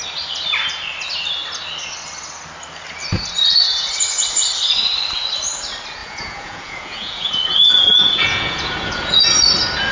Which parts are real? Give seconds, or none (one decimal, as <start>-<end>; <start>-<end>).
0.0-6.0; 9.2-9.9